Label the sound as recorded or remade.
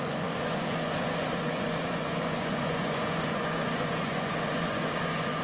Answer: remade